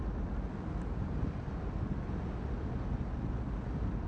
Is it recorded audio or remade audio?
recorded